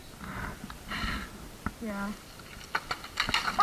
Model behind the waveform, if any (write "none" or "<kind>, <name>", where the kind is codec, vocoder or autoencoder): none